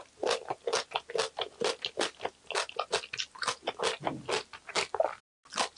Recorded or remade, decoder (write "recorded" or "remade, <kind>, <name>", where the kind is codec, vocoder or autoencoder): recorded